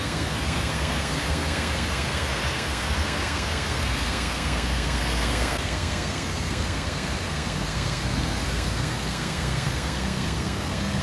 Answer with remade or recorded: remade